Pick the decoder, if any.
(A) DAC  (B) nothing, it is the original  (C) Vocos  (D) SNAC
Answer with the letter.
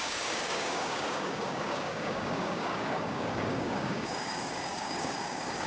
A